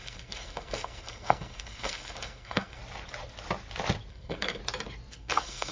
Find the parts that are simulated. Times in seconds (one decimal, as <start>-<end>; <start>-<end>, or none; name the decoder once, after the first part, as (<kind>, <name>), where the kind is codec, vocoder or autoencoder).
0.0-2.8 (codec, SNAC); 4.1-4.6; 5.1-5.7

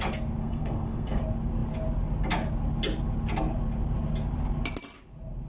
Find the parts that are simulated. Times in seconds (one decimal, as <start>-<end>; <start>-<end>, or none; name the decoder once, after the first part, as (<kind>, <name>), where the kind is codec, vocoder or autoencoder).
0.4-1.2 (codec, SNAC)